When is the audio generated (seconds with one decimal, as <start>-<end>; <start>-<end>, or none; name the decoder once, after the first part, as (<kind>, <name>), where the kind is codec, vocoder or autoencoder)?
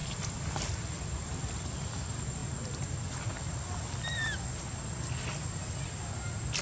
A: none